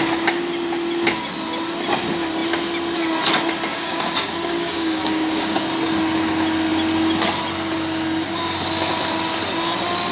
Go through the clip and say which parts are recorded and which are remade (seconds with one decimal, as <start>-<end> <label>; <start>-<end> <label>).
0.0-3.7 recorded; 3.7-5.6 remade; 5.6-10.1 recorded